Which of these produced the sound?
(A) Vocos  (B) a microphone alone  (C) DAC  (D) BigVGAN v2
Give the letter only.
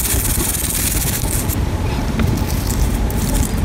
B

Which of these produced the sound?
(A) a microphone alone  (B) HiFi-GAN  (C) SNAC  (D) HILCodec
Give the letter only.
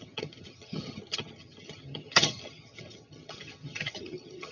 B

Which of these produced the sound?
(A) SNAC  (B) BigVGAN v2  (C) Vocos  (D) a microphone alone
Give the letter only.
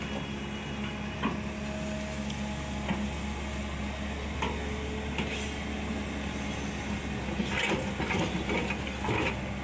D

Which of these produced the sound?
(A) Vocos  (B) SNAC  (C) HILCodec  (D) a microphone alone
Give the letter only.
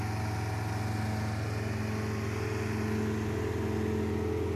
D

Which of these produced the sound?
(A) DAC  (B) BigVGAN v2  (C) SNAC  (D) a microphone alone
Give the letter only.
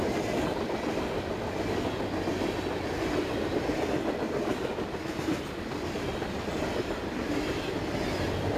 D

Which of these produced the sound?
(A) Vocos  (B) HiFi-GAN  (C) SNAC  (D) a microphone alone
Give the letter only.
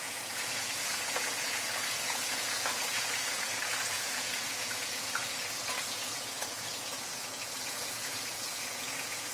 A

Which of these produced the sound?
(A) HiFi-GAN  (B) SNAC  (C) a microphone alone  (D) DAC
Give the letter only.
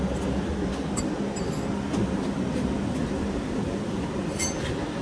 C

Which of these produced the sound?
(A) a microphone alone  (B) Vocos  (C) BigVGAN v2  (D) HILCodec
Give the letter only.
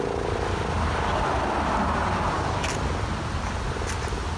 A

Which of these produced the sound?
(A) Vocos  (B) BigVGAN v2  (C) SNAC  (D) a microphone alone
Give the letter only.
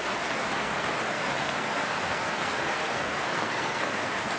C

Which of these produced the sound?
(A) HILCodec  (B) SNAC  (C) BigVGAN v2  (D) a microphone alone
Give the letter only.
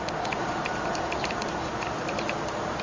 C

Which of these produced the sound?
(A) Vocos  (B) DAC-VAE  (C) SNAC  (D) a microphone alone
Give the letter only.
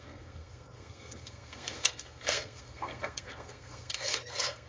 C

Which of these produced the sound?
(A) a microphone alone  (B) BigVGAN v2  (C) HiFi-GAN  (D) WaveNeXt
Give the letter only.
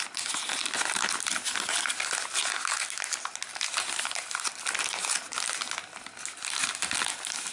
A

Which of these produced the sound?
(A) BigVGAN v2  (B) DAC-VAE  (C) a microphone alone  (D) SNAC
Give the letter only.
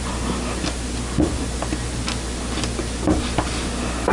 C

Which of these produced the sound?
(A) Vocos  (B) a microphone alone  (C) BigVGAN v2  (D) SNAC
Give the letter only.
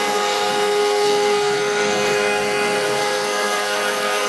D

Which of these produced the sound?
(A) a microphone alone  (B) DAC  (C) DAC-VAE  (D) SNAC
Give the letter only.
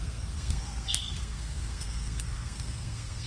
D